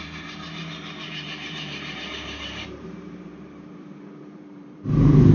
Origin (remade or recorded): remade